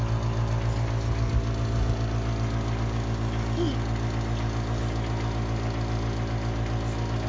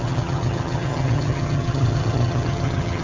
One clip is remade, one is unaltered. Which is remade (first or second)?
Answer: second